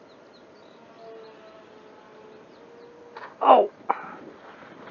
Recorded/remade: recorded